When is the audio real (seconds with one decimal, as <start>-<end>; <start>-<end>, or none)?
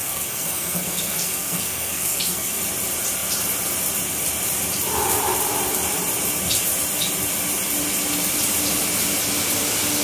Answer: 2.6-10.0